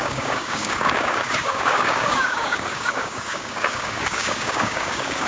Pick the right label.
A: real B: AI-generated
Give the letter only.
B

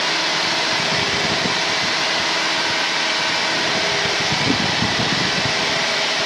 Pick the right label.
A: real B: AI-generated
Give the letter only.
A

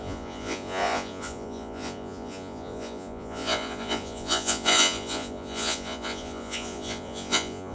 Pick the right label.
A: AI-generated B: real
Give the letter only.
A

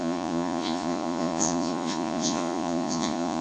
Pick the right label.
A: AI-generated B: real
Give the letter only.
A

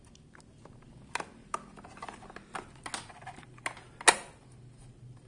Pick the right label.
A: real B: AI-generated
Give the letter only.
A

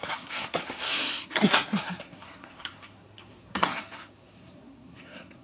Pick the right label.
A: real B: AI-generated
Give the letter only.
B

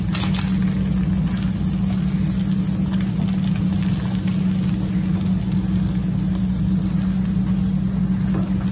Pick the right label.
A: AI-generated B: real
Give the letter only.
B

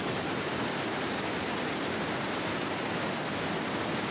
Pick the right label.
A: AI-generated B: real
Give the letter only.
B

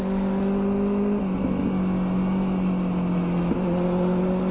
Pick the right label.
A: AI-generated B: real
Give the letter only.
B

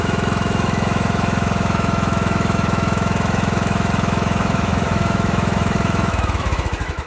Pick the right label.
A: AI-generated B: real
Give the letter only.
A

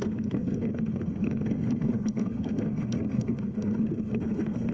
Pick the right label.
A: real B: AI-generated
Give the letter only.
B